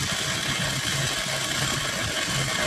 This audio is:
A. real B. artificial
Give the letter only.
A